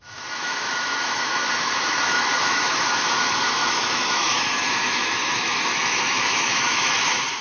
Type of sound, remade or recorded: remade